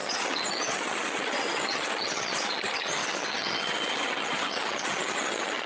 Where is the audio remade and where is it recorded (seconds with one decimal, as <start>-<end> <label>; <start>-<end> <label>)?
0.0-5.7 remade